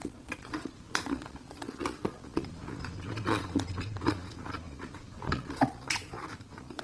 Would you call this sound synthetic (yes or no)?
yes